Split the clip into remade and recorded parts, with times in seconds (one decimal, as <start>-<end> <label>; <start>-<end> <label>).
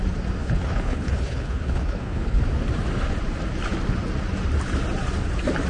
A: 0.0-0.4 recorded; 0.4-2.4 remade; 2.4-5.7 recorded